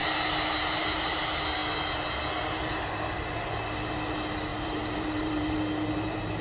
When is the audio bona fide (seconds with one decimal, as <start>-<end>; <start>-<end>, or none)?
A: 0.0-4.5; 5.6-6.4